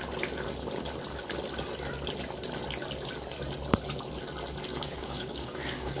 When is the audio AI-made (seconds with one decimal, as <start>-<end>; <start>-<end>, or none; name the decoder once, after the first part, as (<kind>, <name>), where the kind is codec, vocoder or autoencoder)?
4.7-6.0 (codec, DAC)